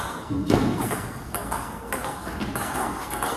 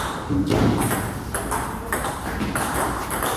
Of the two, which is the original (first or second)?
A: second